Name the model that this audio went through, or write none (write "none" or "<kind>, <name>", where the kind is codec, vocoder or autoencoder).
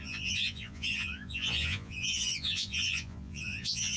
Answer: vocoder, Vocos